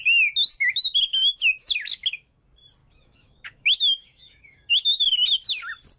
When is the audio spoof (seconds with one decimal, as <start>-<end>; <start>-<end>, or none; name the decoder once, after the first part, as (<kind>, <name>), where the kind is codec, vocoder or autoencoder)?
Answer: 0.5-2.4 (autoencoder, DAC-VAE); 2.8-5.0

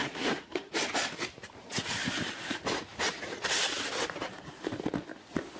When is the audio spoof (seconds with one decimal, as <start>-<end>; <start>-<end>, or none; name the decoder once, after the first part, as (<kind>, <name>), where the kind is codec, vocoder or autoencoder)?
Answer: 0.0-0.7 (codec, SNAC)

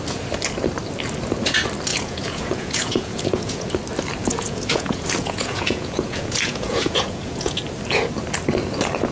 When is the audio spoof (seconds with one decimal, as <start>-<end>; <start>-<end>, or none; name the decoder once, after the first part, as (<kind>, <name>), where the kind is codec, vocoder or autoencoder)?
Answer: 1.9-3.7 (vocoder, Vocos); 4.2-7.6